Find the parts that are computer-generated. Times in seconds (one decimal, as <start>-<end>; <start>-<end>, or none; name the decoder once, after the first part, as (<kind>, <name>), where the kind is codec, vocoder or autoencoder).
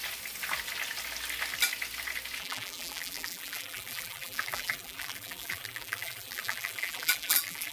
2.4-7.7 (vocoder, BigVGAN v2)